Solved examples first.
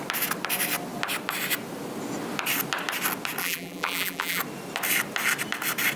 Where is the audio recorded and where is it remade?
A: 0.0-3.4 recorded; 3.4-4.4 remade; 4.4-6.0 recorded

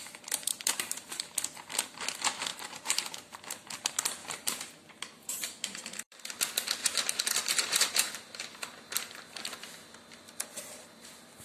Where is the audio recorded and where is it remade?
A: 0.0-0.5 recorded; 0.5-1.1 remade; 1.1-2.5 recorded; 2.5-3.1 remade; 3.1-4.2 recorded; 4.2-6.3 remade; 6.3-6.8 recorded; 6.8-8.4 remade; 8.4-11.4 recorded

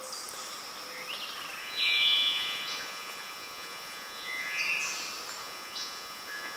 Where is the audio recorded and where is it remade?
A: 0.0-1.6 recorded; 1.6-4.6 remade; 4.6-5.4 recorded; 5.4-6.6 remade